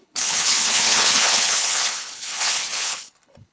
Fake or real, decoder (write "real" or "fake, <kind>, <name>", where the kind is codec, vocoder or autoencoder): fake, codec, HILCodec